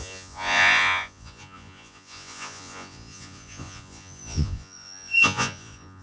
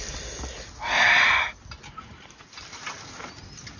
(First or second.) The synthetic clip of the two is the first